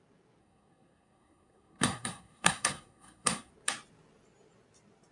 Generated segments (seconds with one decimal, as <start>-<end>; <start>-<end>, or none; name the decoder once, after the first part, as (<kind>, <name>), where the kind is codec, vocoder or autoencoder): 0.4-3.5 (codec, SNAC)